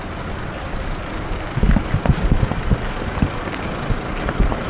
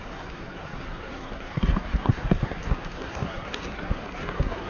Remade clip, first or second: second